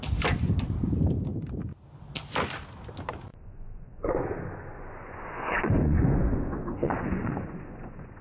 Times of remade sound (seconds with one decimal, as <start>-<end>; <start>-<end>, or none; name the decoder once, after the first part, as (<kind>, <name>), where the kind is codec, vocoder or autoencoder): 3.3-8.2 (vocoder, Vocos)